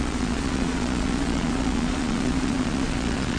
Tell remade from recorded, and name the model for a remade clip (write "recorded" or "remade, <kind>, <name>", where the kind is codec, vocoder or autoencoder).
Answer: remade, vocoder, Vocos